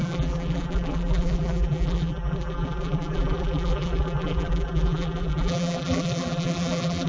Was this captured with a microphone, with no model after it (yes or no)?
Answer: no